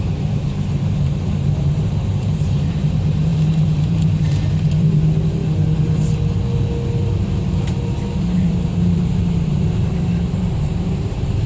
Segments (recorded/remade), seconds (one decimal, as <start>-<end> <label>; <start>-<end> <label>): 0.0-5.4 remade; 5.4-7.0 recorded; 7.0-11.5 remade